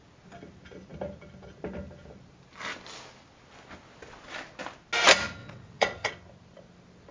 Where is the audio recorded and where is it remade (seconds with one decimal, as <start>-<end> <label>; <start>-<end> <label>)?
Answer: 0.0-5.4 recorded; 5.4-6.1 remade; 6.1-7.1 recorded